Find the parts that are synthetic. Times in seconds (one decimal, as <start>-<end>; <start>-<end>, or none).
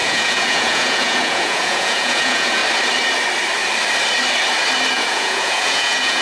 0.0-2.6; 4.9-6.2